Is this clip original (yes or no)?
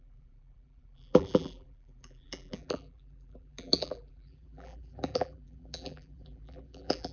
no